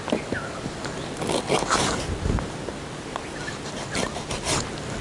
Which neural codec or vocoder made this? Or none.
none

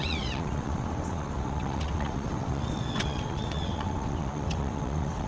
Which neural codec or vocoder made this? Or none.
vocoder, WaveNeXt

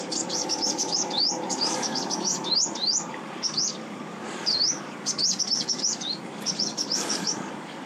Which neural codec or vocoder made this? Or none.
codec, DAC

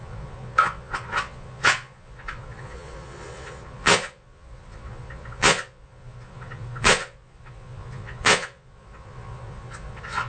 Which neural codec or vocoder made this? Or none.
vocoder, Vocos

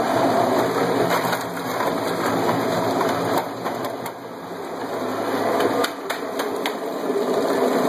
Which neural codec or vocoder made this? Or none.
none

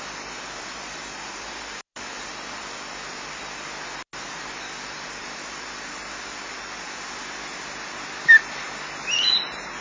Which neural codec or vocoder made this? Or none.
none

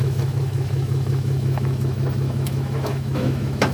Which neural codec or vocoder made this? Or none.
autoencoder, DAC-VAE